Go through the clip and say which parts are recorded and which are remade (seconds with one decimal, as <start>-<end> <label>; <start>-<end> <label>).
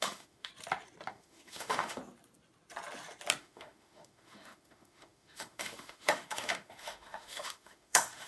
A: 0.0-0.5 remade; 0.5-1.1 recorded; 1.1-2.0 remade; 2.0-3.4 recorded; 3.4-8.3 remade